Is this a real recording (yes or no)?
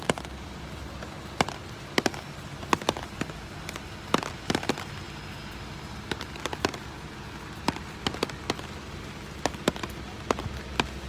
yes